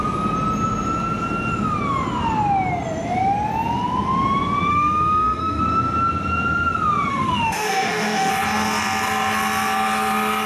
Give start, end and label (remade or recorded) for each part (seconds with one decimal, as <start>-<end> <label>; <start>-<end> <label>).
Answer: 0.0-4.7 recorded; 4.7-5.6 remade; 5.6-7.1 recorded; 7.1-8.3 remade; 8.3-10.5 recorded